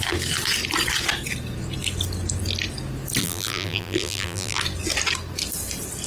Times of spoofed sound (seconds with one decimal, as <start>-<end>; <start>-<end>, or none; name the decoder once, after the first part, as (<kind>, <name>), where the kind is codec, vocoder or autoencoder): 3.2-4.6 (vocoder, BigVGAN v2)